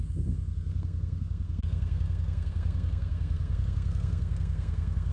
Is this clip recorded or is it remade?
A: remade